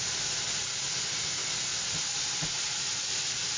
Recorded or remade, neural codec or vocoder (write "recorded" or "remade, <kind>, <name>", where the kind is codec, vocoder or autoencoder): recorded